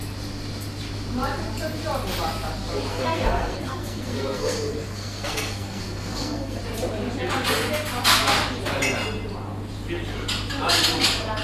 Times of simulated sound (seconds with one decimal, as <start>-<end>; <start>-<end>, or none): 2.9-6.6